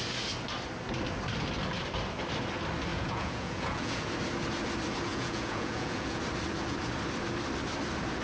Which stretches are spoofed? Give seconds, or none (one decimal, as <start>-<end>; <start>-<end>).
2.9-4.1; 5.1-6.2